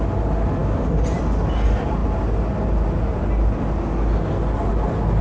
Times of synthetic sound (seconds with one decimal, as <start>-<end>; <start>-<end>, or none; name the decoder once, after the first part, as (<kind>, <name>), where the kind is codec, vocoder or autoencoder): 0.6-1.2 (vocoder, BigVGAN v2)